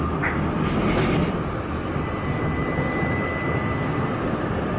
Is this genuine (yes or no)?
yes